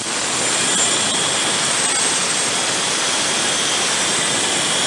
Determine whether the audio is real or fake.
real